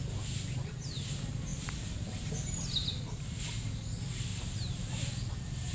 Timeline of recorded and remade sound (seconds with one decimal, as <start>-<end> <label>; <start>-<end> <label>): 0.0-1.5 recorded; 1.5-2.3 remade; 2.3-5.7 recorded